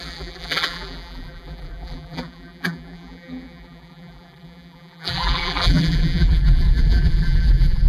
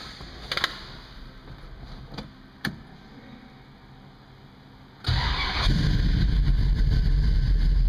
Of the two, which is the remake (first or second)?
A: first